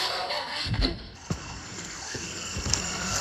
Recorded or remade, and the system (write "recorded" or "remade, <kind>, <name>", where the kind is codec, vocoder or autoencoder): remade, codec, SNAC